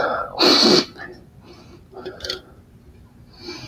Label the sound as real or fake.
real